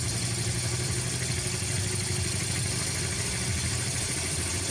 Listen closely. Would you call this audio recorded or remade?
recorded